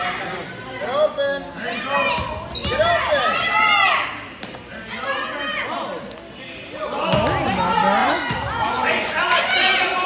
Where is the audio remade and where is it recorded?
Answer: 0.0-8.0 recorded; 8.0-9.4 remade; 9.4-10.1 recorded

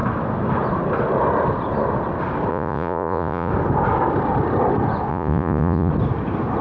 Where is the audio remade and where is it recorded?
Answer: 0.0-2.5 recorded; 2.5-3.5 remade; 3.5-5.1 recorded; 5.1-5.9 remade; 5.9-6.6 recorded

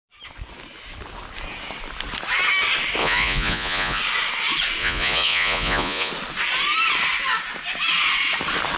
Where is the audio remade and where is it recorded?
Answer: 0.0-3.0 recorded; 3.0-4.0 remade; 4.0-4.8 recorded; 4.8-6.1 remade; 6.1-8.8 recorded

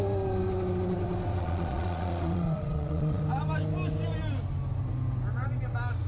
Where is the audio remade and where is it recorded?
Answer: 0.0-1.4 recorded; 1.4-3.2 remade; 3.2-6.1 recorded

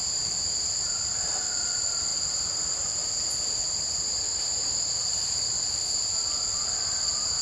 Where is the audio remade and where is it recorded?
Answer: 0.0-7.4 recorded

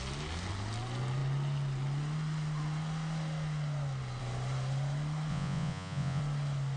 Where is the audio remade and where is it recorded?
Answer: 0.0-5.3 recorded; 5.3-6.2 remade; 6.2-6.8 recorded